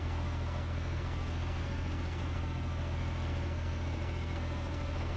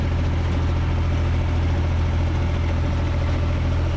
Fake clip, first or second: first